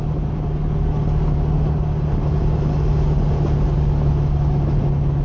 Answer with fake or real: real